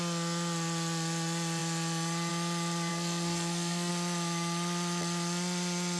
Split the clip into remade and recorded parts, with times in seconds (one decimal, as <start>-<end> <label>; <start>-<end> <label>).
0.0-2.9 recorded; 2.9-3.9 remade; 3.9-6.0 recorded